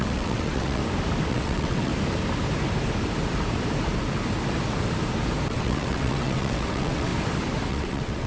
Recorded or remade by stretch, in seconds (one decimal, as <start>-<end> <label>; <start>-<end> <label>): 0.0-0.8 remade; 0.8-1.3 recorded; 1.3-1.9 remade; 1.9-5.5 recorded; 5.5-7.1 remade; 7.1-7.7 recorded; 7.7-8.3 remade